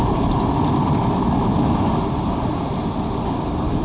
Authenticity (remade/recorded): recorded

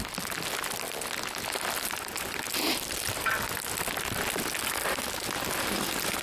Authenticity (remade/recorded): recorded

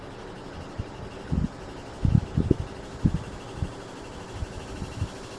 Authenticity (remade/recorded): recorded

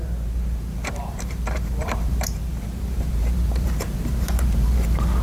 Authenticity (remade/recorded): remade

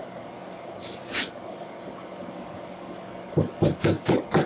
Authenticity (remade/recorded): remade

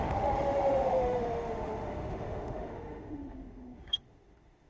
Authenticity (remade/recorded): remade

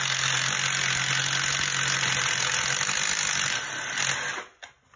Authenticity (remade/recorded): recorded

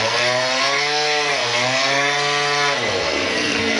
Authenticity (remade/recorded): remade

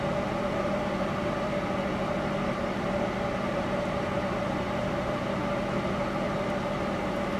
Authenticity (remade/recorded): recorded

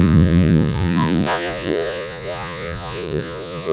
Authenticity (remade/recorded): remade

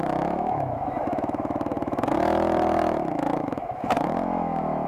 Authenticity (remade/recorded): remade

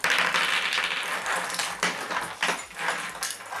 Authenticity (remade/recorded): recorded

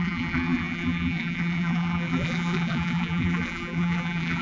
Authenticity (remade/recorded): remade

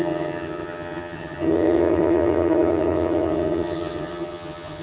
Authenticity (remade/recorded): remade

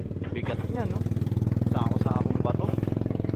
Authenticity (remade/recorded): remade